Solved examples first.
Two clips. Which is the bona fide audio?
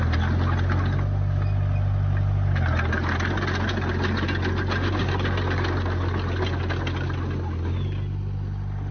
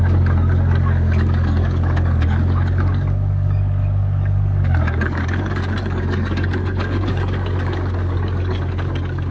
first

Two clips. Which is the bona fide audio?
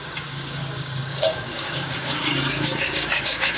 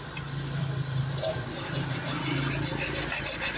second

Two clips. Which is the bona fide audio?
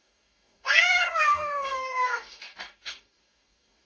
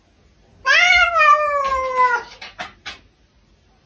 second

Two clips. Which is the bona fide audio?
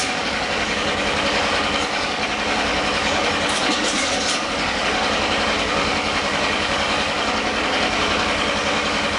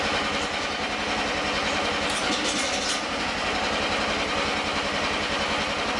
second